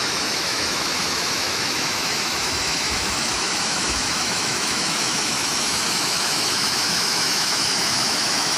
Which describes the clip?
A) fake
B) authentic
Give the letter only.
A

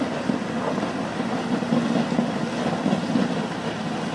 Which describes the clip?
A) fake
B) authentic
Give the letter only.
B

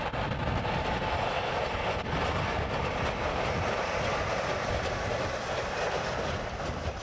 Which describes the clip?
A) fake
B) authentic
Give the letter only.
B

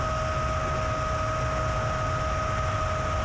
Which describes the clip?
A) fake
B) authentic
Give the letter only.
B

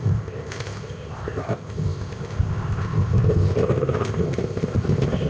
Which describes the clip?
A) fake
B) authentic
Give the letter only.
A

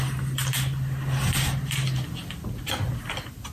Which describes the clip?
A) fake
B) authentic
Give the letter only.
B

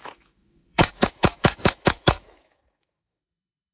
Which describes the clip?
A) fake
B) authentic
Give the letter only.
A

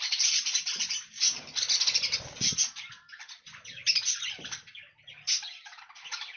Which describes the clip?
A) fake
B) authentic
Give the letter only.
B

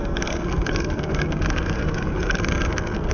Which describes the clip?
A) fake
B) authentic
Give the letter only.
A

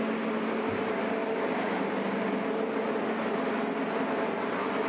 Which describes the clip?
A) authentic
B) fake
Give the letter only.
A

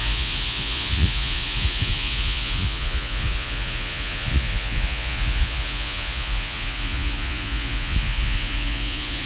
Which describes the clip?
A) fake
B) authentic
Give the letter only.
A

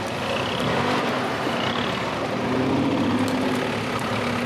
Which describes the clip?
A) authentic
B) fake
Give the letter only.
A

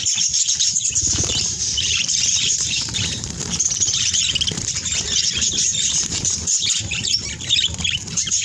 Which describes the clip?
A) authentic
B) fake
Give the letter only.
B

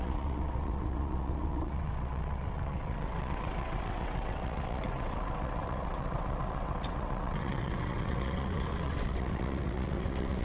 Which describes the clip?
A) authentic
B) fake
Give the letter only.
B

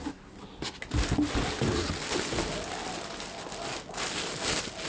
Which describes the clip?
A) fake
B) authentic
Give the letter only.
B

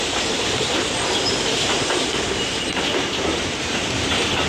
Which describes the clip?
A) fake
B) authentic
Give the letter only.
A